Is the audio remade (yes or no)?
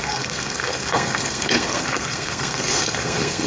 yes